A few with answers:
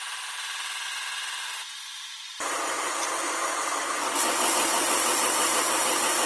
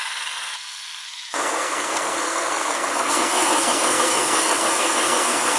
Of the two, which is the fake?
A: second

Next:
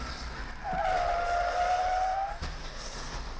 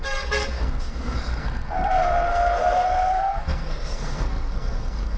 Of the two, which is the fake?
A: second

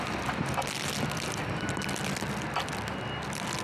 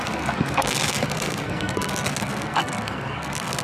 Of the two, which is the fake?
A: second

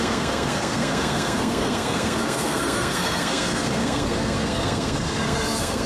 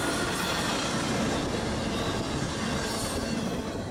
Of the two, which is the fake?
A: first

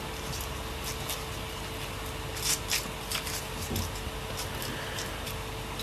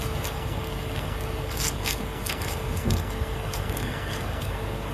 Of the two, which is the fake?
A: second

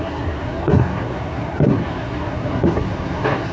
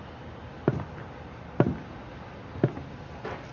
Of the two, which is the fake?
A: first